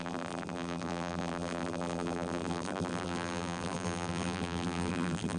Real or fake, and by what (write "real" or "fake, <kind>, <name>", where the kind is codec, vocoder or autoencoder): fake, vocoder, BigVGAN v2